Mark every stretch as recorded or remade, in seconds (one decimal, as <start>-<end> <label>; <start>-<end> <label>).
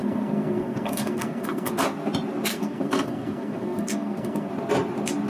0.0-1.7 remade; 1.7-2.5 recorded; 2.5-4.5 remade; 4.5-5.3 recorded